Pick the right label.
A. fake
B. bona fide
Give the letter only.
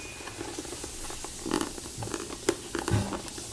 B